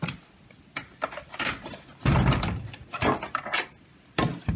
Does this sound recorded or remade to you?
recorded